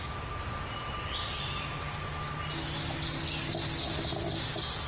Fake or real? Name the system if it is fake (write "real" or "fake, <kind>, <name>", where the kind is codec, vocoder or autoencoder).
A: real